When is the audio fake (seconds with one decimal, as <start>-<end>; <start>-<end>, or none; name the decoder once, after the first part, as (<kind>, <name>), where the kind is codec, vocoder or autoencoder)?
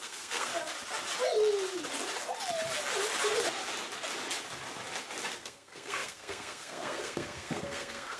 0.0-0.5 (codec, SNAC); 5.4-8.2